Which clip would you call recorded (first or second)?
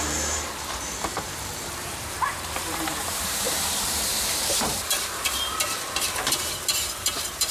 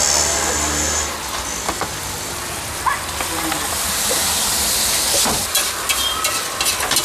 second